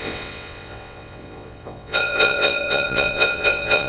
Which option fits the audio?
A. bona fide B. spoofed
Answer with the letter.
B